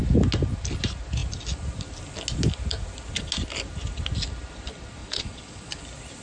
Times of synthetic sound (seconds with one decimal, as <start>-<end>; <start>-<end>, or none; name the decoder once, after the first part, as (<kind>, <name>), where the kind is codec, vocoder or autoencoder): 5.0-5.8 (vocoder, Vocos)